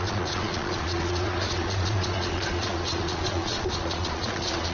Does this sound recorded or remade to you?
remade